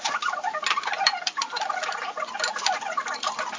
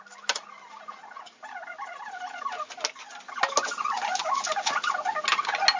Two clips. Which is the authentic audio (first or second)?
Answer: second